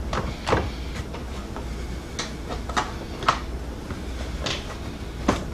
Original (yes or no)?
yes